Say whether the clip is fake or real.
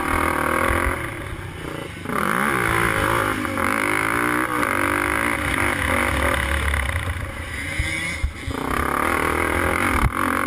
real